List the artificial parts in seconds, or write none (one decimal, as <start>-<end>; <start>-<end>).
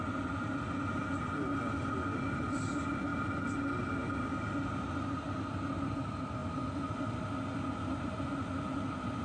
none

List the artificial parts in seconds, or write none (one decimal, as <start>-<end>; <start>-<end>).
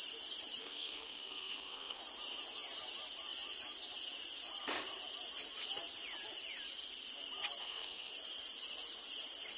0.6-2.0; 7.6-8.1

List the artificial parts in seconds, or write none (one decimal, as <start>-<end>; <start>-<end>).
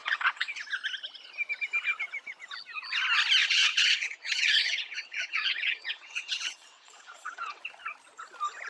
0.0-0.5; 3.4-7.6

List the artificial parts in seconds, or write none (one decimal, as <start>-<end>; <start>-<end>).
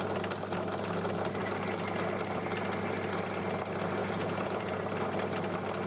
4.0-4.8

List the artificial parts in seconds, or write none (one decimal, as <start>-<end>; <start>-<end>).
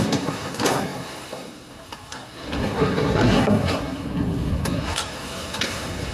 0.0-6.1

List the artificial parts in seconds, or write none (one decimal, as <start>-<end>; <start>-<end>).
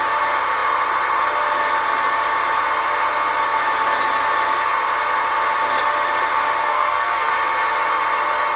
6.6-7.3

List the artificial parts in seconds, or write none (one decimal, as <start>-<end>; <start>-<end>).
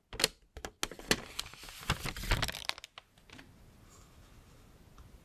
none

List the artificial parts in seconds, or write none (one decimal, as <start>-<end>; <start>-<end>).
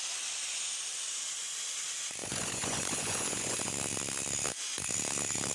2.2-3.7